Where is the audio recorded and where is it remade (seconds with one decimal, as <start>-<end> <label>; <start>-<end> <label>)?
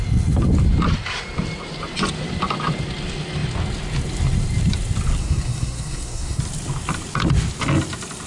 0.0-5.2 recorded; 5.2-6.4 remade; 6.4-8.3 recorded